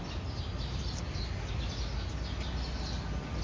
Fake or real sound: real